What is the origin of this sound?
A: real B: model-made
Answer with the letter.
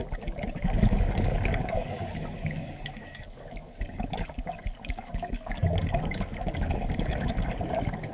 B